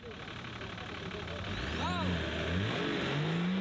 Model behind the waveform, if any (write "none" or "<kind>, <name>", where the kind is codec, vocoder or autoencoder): none